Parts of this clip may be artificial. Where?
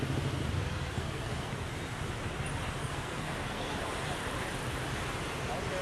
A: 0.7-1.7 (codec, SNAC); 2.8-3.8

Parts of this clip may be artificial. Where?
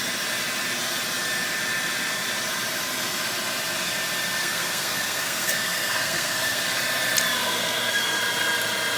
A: 4.4-6.6 (codec, SNAC); 7.4-8.2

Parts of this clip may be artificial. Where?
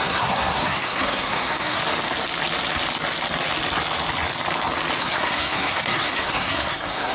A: 0.0-1.8 (codec, SNAC); 5.0-7.1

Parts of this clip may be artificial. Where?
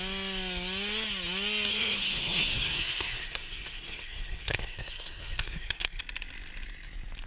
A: 1.7-6.0 (codec, SNAC)